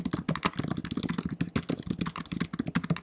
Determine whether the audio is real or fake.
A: real